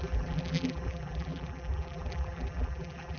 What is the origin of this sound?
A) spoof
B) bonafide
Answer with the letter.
A